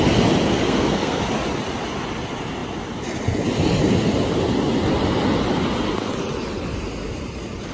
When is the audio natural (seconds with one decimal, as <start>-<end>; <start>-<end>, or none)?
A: 0.0-0.5; 1.2-7.7